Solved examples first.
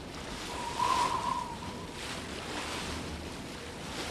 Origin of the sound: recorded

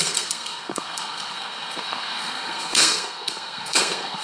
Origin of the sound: remade